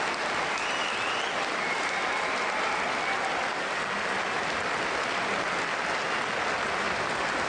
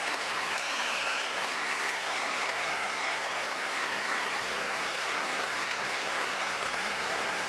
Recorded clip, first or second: first